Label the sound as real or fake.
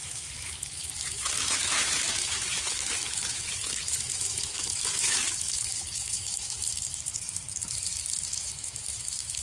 fake